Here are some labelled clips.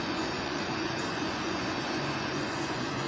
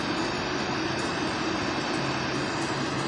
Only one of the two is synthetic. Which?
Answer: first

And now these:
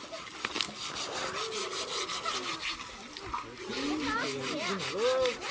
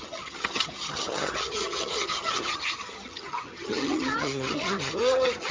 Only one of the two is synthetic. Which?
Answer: second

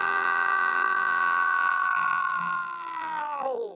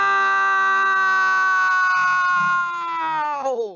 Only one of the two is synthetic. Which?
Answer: first